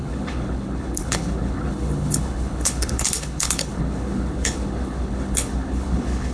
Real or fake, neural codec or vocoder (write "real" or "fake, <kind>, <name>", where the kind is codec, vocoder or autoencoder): fake, codec, HILCodec